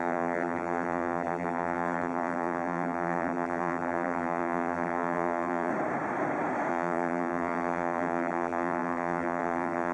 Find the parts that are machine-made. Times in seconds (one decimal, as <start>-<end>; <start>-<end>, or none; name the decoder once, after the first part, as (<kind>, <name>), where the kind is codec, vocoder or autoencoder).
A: 0.0-5.7 (vocoder, BigVGAN v2); 6.7-9.9